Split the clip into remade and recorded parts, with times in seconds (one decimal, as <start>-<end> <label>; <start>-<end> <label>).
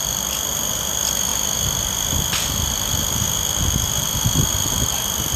0.0-5.4 recorded